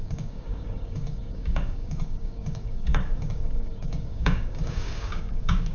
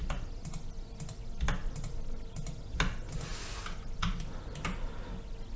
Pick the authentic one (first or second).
second